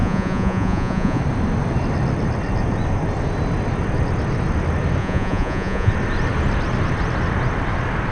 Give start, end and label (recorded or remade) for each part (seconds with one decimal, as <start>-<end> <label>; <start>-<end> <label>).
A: 0.0-1.2 remade; 1.2-5.0 recorded; 5.0-5.9 remade; 5.9-8.1 recorded